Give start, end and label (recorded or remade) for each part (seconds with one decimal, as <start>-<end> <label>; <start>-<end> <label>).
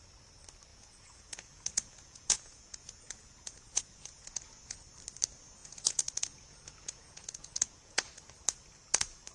0.0-0.7 recorded; 0.7-4.8 remade; 4.8-5.6 recorded; 5.6-8.1 remade; 8.1-9.3 recorded